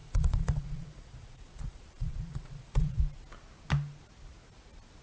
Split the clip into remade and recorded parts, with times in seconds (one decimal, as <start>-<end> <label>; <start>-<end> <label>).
0.0-3.0 remade; 3.0-5.0 recorded